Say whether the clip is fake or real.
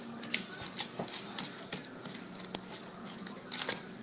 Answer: real